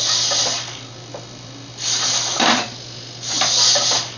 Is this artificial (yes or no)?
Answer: no